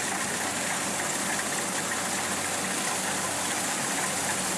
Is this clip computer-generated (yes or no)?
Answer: no